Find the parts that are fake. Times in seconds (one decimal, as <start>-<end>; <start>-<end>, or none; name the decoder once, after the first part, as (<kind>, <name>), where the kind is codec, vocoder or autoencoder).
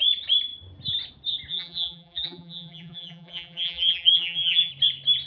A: 1.5-4.7 (vocoder, BigVGAN v2)